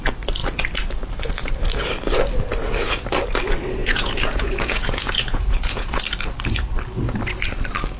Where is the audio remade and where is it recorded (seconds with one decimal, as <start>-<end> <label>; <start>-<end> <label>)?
0.0-3.8 recorded; 3.8-6.0 remade; 6.0-8.0 recorded